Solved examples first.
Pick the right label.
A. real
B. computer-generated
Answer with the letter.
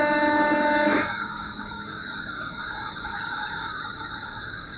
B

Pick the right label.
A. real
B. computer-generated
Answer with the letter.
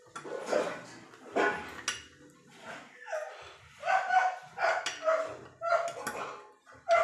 A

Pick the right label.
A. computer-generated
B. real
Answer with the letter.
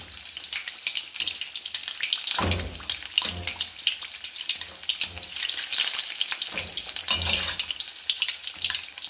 B